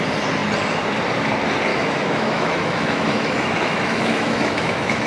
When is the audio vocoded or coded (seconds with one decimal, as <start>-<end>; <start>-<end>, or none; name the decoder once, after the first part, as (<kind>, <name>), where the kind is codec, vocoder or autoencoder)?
1.7-5.1 (autoencoder, DAC-VAE)